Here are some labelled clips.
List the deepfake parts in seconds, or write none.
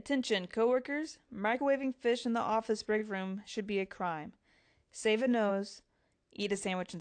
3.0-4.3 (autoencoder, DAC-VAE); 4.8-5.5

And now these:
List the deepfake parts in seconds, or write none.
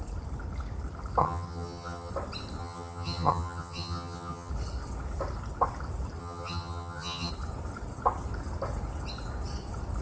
1.2-2.1 (vocoder, HiFi-GAN); 2.6-4.5; 6.2-7.3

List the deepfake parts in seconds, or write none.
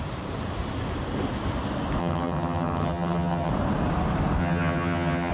2.0-3.5 (vocoder, HiFi-GAN); 4.4-5.3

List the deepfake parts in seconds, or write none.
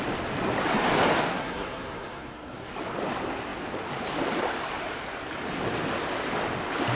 1.3-2.7 (codec, SNAC)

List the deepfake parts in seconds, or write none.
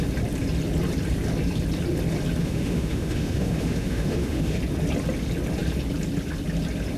2.4-4.6 (autoencoder, DAC-VAE)